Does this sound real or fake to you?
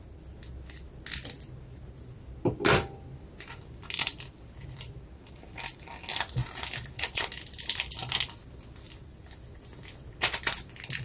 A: real